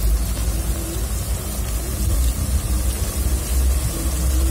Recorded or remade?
recorded